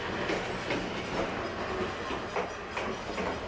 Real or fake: real